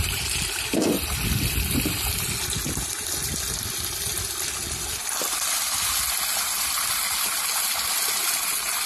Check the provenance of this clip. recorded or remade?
recorded